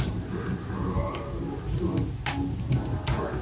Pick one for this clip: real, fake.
real